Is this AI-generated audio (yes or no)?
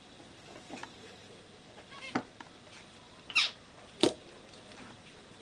no